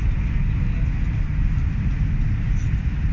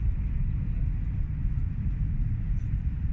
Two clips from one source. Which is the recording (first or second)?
first